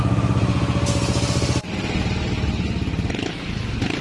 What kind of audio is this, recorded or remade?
recorded